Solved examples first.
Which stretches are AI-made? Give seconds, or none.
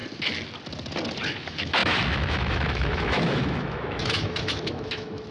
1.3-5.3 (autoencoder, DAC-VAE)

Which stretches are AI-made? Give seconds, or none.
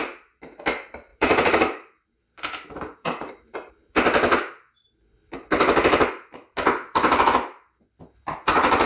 1.1-3.7 (vocoder, BigVGAN v2)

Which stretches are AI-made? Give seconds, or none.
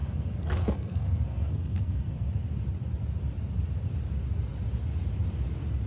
0.0-2.3 (codec, SNAC)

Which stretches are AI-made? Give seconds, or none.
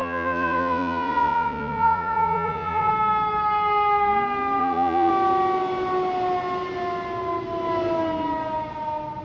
0.0-2.9 (vocoder, Vocos); 4.6-5.1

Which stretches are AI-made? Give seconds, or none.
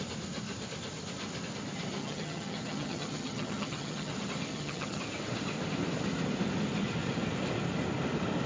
2.0-4.1 (vocoder, HiFi-GAN); 4.5-5.0